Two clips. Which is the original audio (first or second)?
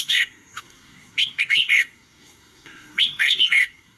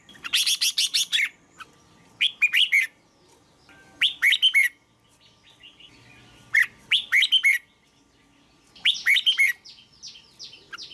second